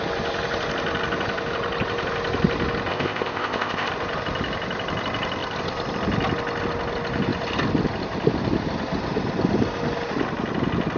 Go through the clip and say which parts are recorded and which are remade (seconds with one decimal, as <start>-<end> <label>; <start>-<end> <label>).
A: 0.0-2.9 recorded; 2.9-3.9 remade; 3.9-11.0 recorded